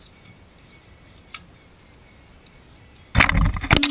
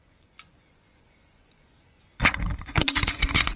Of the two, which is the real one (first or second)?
first